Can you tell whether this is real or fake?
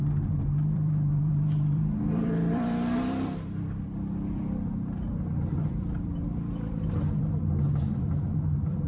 fake